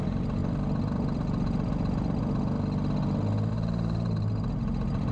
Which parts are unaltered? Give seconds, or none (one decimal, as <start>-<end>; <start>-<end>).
0.4-3.5